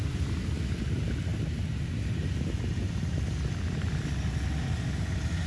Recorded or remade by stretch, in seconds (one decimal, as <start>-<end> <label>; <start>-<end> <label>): 0.0-5.5 recorded